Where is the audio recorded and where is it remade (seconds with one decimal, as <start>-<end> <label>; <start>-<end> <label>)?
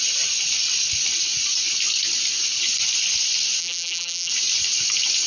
0.0-3.6 recorded; 3.6-4.3 remade; 4.3-5.3 recorded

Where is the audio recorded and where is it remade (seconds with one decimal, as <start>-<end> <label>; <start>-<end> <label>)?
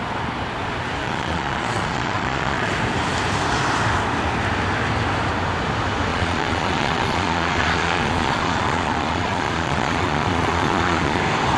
0.0-1.0 recorded; 1.0-2.7 remade; 2.7-6.1 recorded; 6.1-11.2 remade; 11.2-11.6 recorded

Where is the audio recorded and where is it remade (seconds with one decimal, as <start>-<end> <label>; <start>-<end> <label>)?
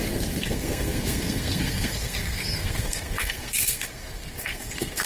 0.0-5.1 remade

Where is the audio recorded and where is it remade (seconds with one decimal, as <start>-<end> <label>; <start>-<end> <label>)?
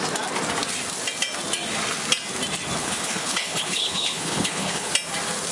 0.0-2.8 recorded; 2.8-4.9 remade; 4.9-5.5 recorded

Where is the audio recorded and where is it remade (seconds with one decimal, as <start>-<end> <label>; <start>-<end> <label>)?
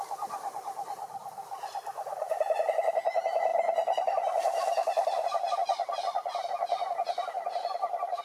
0.0-8.2 recorded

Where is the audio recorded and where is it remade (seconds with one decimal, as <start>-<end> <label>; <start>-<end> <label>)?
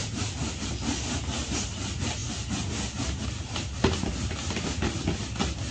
0.0-0.7 remade; 0.7-5.7 recorded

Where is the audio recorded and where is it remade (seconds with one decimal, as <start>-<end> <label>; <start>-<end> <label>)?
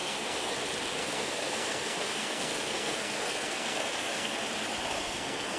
0.0-0.5 remade; 0.5-1.0 recorded; 1.0-4.4 remade; 4.4-4.9 recorded; 4.9-5.6 remade